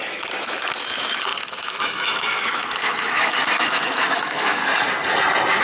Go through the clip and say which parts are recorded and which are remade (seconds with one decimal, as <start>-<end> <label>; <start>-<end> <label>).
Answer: 0.0-4.6 remade; 4.6-5.6 recorded